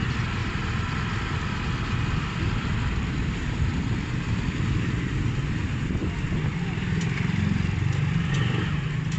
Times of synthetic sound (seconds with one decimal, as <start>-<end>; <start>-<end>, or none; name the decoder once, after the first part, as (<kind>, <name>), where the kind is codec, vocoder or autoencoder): 0.4-4.7 (vocoder, BigVGAN v2); 5.6-9.2